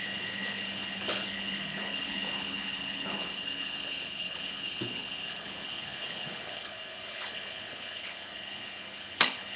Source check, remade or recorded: remade